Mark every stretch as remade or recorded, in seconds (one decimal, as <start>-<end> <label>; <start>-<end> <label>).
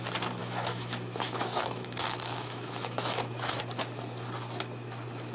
0.0-0.4 recorded; 0.4-3.6 remade; 3.6-5.3 recorded